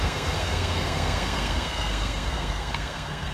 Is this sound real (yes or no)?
no